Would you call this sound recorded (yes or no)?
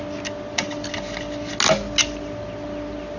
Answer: yes